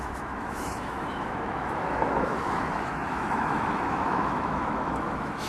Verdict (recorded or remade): remade